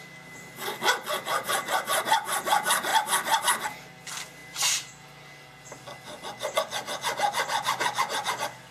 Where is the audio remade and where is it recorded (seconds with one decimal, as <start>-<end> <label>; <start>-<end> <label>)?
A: 0.0-8.7 recorded